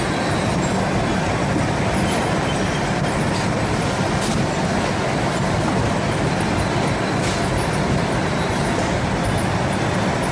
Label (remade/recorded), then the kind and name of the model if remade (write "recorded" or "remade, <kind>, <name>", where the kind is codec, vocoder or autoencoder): recorded